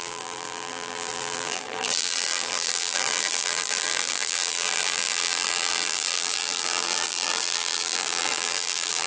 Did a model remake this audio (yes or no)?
yes